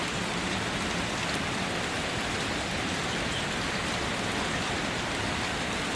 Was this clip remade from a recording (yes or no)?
no